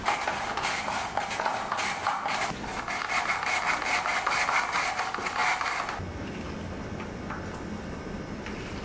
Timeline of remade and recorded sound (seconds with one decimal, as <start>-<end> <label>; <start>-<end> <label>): 0.0-8.8 recorded